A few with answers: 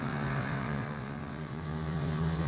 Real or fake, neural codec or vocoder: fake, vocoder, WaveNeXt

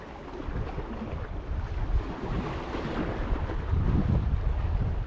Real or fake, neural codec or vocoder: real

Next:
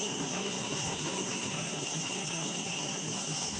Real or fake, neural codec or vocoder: fake, codec, SNAC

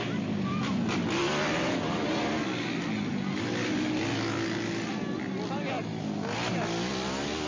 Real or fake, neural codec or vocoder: real